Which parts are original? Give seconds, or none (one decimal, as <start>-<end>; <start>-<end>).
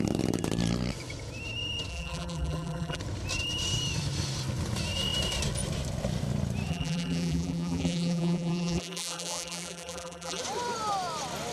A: 0.0-1.9; 3.0-6.7; 10.4-11.5